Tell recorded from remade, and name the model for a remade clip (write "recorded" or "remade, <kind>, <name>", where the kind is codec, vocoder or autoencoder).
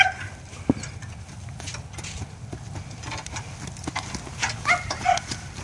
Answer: recorded